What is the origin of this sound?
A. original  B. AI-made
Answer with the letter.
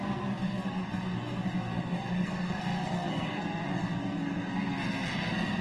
B